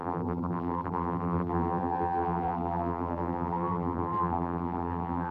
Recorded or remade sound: remade